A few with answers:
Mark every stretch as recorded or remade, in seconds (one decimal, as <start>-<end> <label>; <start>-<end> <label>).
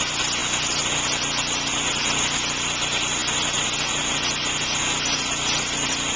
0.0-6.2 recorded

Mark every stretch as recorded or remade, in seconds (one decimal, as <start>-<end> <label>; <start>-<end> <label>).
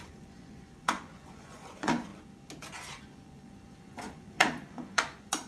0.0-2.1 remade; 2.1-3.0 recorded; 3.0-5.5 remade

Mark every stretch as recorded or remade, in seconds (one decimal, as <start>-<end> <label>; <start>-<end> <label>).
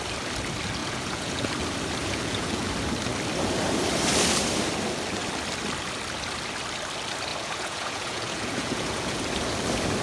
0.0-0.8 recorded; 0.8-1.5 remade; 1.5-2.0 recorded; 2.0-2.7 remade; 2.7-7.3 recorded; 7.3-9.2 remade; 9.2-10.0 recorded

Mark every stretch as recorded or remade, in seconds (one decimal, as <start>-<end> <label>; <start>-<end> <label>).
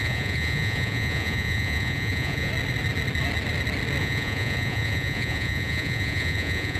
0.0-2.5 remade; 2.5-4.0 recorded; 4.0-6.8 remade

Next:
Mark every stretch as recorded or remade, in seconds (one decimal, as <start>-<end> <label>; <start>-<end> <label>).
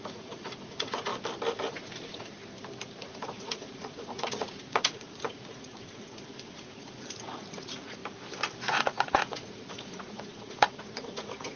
0.0-1.1 remade; 1.1-1.7 recorded; 1.7-2.4 remade; 2.4-3.0 recorded; 3.0-8.0 remade; 8.0-8.6 recorded; 8.6-11.6 remade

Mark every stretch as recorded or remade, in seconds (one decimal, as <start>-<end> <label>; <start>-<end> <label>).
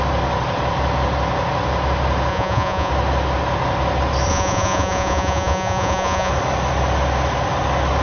0.0-2.3 recorded; 2.3-2.9 remade; 2.9-4.3 recorded; 4.3-6.3 remade; 6.3-8.0 recorded